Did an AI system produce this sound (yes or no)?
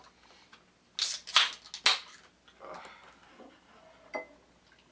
no